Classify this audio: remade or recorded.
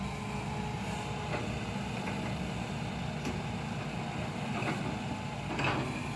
recorded